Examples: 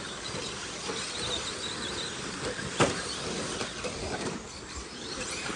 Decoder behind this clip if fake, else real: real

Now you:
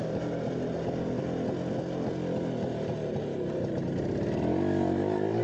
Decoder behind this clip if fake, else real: real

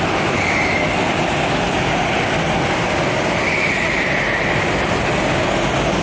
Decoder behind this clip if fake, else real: real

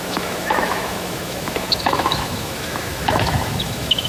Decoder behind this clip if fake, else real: fake, autoencoder, DAC-VAE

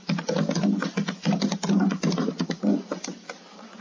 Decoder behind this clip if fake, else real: real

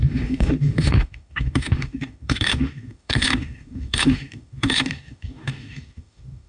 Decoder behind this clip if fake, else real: fake, autoencoder, DAC-VAE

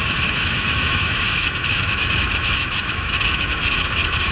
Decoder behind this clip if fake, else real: fake, autoencoder, DAC-VAE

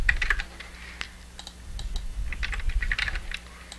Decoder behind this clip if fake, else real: real